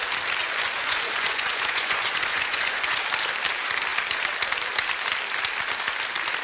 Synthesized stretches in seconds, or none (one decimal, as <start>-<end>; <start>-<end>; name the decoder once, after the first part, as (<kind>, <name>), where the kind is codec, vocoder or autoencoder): 0.4-3.0 (vocoder, Vocos)